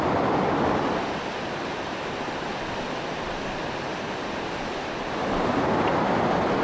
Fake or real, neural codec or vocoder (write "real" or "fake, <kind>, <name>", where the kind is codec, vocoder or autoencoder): real